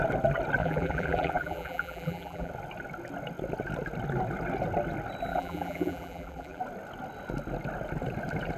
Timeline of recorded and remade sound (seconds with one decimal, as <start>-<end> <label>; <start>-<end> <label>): 0.0-0.6 recorded; 0.6-2.5 remade; 2.5-5.3 recorded; 5.3-6.6 remade; 6.6-8.6 recorded